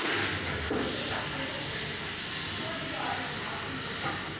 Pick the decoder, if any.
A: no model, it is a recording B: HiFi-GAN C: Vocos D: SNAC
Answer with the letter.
A